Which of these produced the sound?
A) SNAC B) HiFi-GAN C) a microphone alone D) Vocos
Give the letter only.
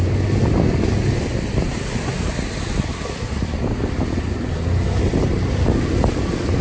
C